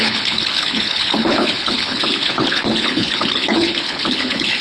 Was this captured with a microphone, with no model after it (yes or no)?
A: no